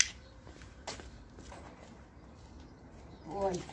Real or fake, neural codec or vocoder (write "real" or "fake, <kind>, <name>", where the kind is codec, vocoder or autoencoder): real